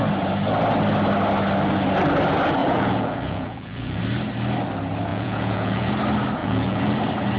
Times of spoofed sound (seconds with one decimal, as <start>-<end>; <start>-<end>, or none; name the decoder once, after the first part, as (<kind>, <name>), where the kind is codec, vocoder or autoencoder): 2.6-4.0 (vocoder, Vocos); 5.1-5.9; 6.4-6.9